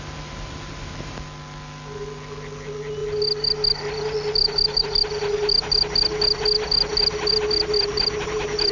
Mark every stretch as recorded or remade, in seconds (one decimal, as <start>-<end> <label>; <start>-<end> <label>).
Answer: 0.0-8.7 recorded